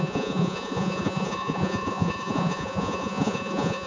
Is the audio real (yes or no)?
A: no